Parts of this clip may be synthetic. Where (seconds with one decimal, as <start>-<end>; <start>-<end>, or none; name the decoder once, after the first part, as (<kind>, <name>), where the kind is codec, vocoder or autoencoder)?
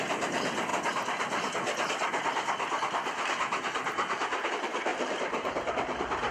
0.0-0.7 (vocoder, BigVGAN v2); 4.5-6.3